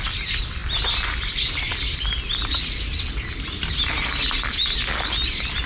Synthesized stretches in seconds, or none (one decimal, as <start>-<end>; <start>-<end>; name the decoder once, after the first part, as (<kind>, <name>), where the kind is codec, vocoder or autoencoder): none

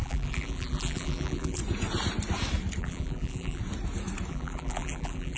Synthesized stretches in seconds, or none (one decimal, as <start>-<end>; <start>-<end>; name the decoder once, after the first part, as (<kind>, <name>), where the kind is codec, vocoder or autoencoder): 0.0-1.6 (vocoder, BigVGAN v2); 2.8-3.6; 4.3-5.4

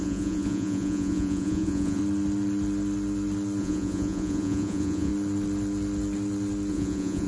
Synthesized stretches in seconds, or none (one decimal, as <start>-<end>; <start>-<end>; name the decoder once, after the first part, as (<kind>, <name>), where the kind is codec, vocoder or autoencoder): 0.0-2.0 (vocoder, Vocos); 3.6-5.1; 6.7-7.3

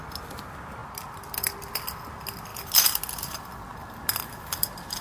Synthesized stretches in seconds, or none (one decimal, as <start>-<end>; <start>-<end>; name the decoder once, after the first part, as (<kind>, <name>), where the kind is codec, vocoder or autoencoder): none

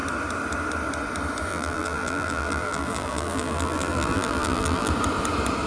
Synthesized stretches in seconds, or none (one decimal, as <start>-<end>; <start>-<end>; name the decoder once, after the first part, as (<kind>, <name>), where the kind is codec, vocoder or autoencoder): 1.5-4.9 (vocoder, BigVGAN v2)

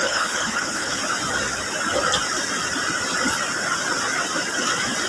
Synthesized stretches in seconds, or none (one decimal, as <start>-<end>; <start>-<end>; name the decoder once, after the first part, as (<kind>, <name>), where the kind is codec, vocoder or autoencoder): 0.0-1.0 (codec, HILCodec)